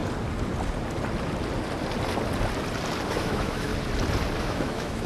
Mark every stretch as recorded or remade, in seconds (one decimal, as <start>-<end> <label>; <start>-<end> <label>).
0.0-3.1 recorded; 3.1-3.7 remade; 3.7-4.4 recorded; 4.4-5.1 remade